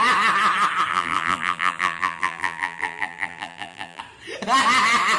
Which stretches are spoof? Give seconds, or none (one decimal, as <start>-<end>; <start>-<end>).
0.9-4.0